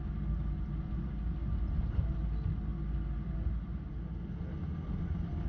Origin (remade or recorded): recorded